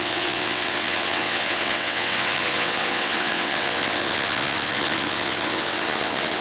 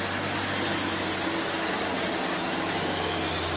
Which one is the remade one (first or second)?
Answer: first